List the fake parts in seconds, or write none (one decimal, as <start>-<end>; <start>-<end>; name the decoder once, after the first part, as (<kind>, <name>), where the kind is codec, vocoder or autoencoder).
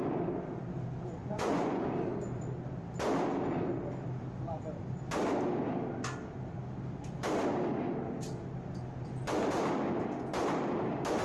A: 1.2-1.9 (vocoder, Vocos)